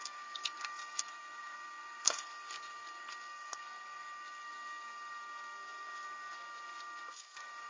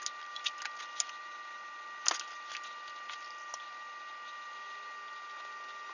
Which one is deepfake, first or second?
first